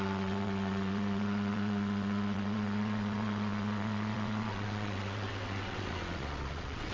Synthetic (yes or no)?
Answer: yes